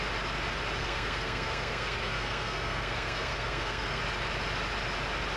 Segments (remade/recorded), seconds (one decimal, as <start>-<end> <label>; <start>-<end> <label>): 0.0-0.8 recorded; 0.8-4.0 remade; 4.0-5.4 recorded